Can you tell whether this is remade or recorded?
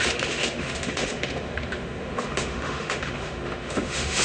remade